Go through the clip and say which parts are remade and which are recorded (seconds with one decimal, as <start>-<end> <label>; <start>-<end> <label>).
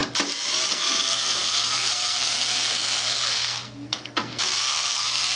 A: 0.0-0.7 recorded; 0.7-5.4 remade